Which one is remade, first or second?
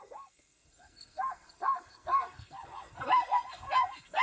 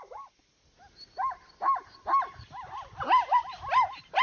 first